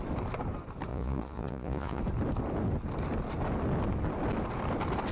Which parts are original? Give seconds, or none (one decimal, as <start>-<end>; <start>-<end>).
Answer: 0.0-0.9; 2.0-5.1